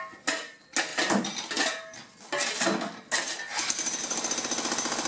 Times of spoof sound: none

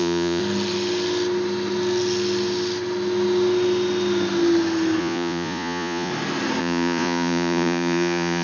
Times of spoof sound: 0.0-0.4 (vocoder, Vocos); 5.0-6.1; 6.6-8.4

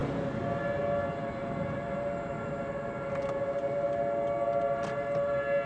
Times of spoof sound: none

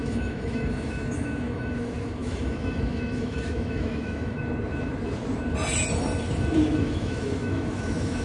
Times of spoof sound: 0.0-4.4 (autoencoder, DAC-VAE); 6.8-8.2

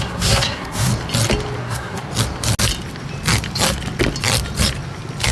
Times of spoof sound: 0.0-0.9 (codec, SNAC); 1.6-2.0

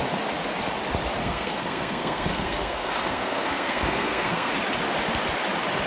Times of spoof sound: 1.2-4.5 (codec, SNAC)